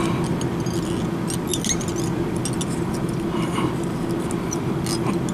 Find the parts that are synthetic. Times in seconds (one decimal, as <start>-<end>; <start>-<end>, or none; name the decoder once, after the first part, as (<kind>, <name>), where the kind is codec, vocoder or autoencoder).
none